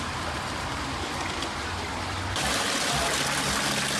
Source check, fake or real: real